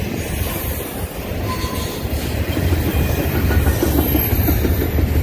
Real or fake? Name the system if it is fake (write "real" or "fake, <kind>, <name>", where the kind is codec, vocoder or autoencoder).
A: real